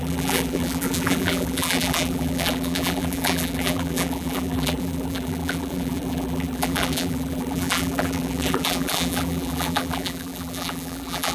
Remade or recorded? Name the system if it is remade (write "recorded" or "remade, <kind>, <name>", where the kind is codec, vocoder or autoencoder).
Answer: remade, vocoder, BigVGAN v2